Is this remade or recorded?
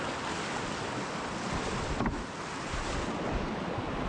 recorded